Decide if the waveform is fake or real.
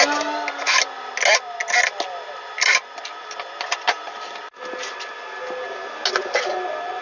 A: real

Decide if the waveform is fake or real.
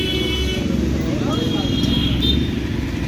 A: real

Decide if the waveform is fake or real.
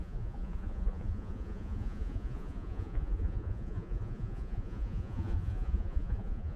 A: fake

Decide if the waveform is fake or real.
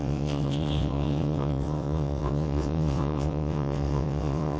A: fake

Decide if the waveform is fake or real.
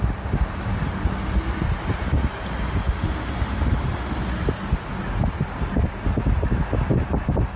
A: real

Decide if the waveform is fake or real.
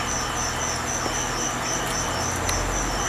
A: real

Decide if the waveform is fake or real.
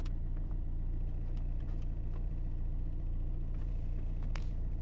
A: fake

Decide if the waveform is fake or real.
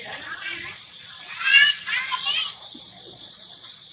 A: fake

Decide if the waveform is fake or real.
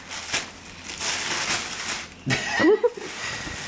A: real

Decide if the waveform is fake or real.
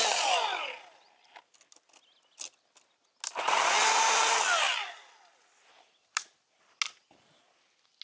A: real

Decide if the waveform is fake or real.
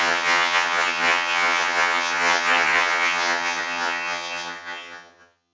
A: fake